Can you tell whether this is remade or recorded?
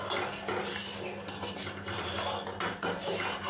recorded